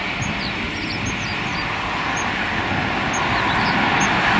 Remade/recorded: recorded